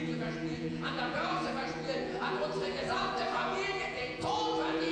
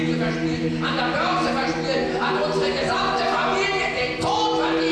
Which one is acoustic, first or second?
second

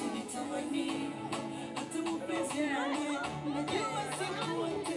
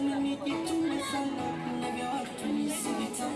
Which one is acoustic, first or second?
second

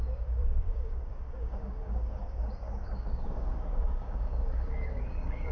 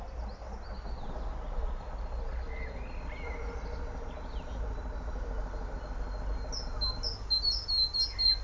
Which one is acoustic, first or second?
second